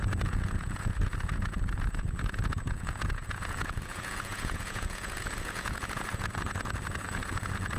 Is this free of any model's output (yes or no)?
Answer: no